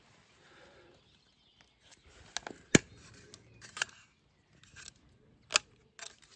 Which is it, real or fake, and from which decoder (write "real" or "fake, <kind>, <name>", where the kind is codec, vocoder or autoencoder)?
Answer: real